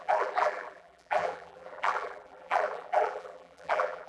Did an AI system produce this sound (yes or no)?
yes